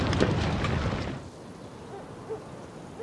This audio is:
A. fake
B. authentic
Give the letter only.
B